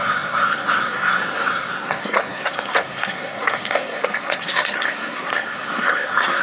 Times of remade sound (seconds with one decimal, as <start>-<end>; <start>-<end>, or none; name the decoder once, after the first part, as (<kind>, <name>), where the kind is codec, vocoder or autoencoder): 0.0-6.4 (codec, SNAC)